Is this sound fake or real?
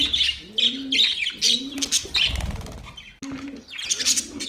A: real